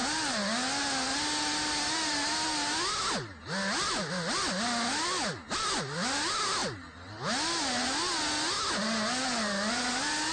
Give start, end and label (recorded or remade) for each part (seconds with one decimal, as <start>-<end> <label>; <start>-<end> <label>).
0.0-10.3 recorded